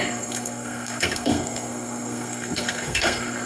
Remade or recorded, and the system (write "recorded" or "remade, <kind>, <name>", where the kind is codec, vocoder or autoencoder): remade, codec, SNAC